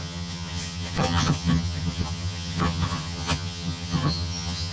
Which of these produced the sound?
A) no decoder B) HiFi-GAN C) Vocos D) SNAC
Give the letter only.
B